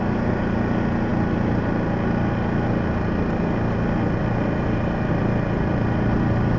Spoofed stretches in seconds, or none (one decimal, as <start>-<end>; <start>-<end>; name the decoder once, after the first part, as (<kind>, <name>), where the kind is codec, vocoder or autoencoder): none